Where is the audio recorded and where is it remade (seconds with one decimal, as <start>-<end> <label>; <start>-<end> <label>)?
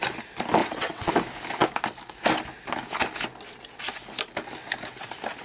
0.0-0.6 recorded; 0.6-1.1 remade; 1.1-5.4 recorded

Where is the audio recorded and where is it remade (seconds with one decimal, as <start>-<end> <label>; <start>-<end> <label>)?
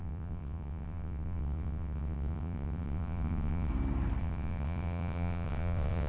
0.0-3.7 remade; 3.7-4.2 recorded; 4.2-6.1 remade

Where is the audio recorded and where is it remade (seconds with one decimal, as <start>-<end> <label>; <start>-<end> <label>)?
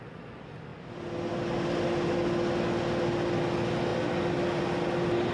0.0-5.3 recorded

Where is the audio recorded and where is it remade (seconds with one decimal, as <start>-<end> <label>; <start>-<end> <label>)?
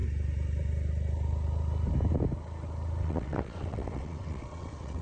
0.0-3.0 recorded; 3.0-5.0 remade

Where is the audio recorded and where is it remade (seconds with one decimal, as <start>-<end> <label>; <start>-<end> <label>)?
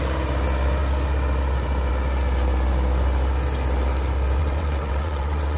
0.0-4.4 recorded; 4.4-5.6 remade